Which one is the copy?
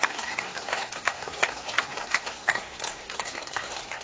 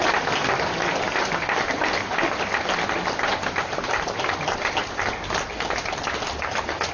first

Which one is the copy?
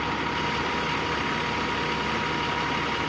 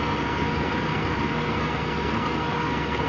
second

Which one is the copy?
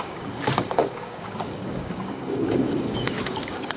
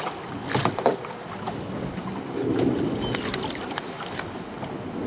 first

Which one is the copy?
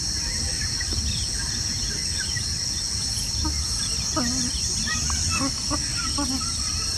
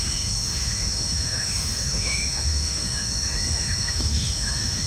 second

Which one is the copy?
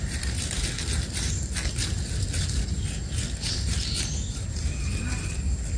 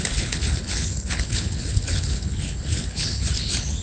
second